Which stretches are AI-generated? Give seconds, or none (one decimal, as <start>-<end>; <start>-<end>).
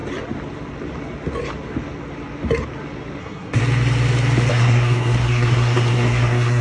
3.2-3.6; 4.5-6.6